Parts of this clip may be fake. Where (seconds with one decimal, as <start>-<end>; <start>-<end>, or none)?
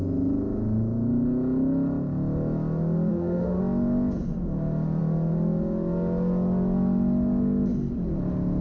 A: 3.1-3.6